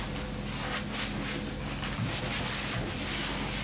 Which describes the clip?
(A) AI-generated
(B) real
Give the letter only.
B